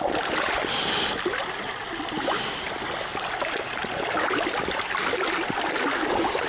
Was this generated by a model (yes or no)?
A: no